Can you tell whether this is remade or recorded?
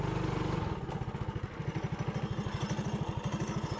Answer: recorded